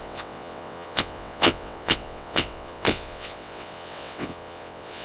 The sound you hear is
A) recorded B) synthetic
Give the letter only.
B